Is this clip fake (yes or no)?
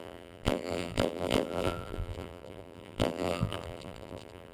yes